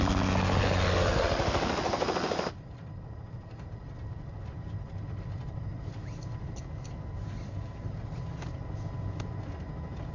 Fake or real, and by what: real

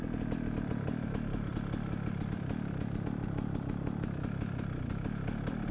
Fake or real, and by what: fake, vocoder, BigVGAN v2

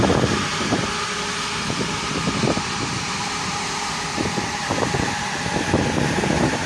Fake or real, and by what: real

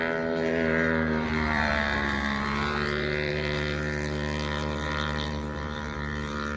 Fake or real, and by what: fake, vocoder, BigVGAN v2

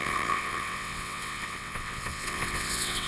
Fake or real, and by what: fake, vocoder, WaveNeXt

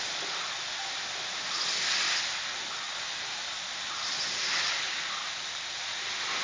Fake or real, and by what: real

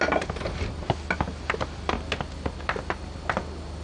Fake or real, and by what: real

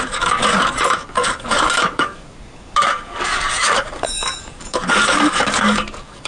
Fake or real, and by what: fake, codec, DAC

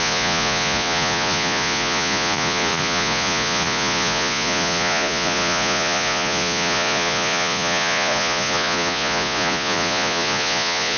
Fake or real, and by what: fake, vocoder, Vocos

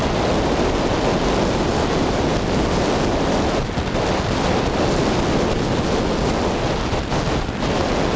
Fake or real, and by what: real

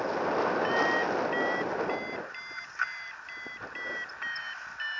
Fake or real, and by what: real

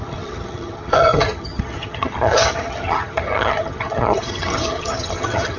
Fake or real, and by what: fake, vocoder, HiFi-GAN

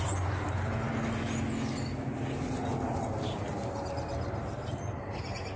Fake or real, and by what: real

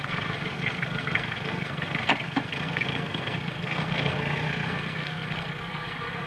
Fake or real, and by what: fake, codec, SNAC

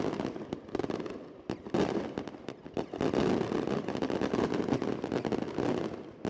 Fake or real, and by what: real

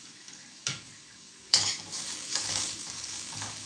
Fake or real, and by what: fake, codec, DAC